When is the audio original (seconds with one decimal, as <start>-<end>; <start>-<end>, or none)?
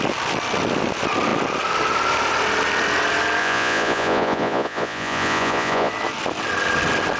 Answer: 0.0-3.4; 5.9-7.2